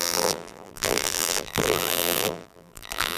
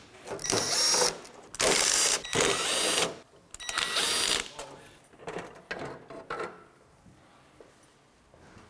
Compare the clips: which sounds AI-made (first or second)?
first